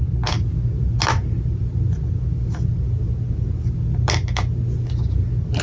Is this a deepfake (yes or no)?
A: no